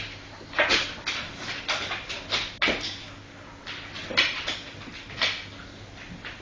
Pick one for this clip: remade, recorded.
recorded